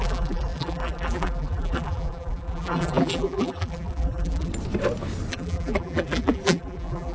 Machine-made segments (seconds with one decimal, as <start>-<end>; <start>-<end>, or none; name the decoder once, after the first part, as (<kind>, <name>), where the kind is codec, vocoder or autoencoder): 0.0-4.5 (vocoder, BigVGAN v2); 5.3-7.1